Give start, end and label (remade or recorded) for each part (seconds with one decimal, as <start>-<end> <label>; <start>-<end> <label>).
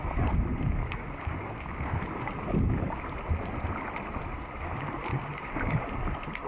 0.0-0.8 recorded; 0.8-2.0 remade; 2.0-5.1 recorded; 5.1-5.8 remade; 5.8-6.5 recorded